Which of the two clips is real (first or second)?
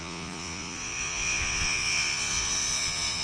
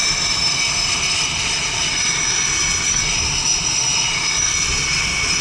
second